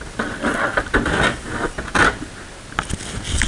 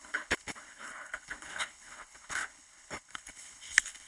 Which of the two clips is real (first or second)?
first